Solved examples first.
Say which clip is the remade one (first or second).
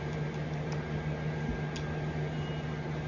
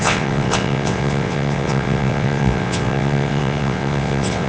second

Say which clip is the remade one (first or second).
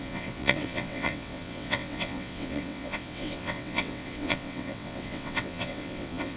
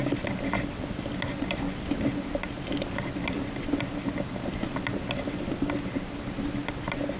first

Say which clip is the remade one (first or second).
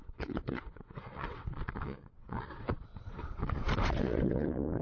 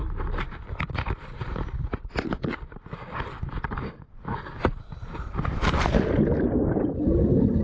first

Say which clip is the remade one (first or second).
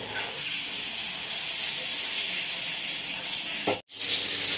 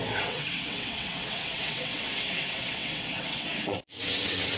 second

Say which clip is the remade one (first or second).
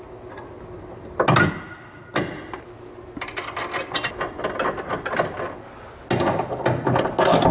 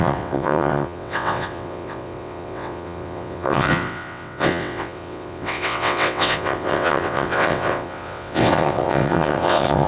second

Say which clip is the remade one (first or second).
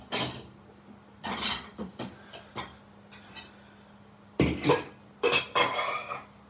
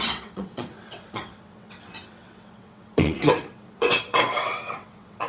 second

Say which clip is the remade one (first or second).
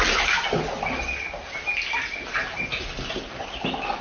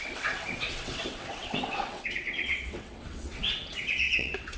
second